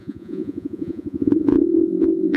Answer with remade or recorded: remade